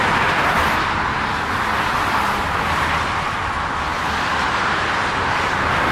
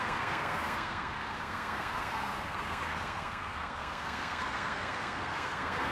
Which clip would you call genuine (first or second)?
first